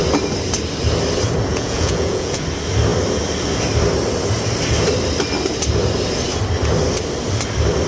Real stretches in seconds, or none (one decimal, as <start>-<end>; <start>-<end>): 0.0-1.5; 2.4-7.9